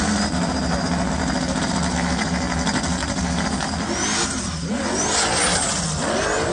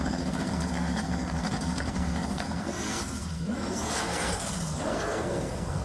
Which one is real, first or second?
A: first